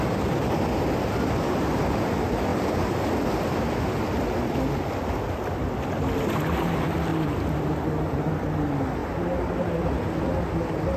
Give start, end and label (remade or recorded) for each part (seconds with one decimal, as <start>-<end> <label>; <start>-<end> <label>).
0.0-7.1 recorded; 7.1-8.3 remade; 8.3-11.0 recorded